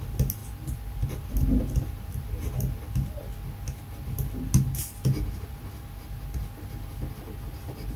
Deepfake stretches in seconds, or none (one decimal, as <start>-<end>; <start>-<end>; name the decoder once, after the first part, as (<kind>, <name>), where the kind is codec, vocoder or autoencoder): none

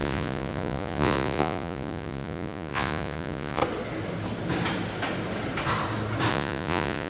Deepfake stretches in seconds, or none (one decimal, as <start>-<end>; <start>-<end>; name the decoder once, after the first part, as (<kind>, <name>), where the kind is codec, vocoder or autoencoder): 0.0-3.6 (vocoder, Vocos); 6.3-7.1

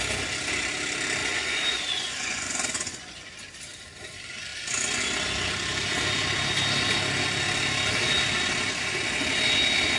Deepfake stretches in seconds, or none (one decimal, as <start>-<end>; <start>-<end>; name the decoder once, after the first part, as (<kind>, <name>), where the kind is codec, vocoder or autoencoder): 1.2-3.3 (vocoder, Vocos)

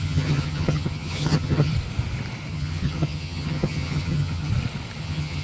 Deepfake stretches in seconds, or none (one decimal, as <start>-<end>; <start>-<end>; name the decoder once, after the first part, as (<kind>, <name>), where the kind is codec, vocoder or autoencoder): 0.0-1.7 (vocoder, HiFi-GAN); 2.5-4.5; 5.0-5.4

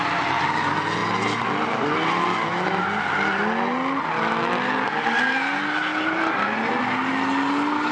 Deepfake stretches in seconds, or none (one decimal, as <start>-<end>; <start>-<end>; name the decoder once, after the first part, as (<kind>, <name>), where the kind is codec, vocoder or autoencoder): 5.9-6.7 (vocoder, BigVGAN v2)

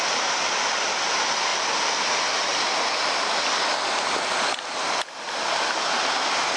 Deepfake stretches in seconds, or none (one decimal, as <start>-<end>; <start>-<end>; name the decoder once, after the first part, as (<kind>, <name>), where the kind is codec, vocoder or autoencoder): none